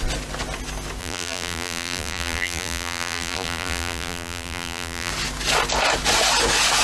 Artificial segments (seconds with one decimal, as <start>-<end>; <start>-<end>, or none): 1.0-5.1